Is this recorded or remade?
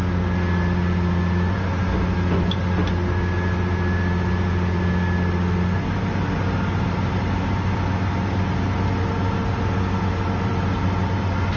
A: recorded